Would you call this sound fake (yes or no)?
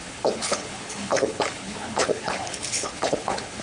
yes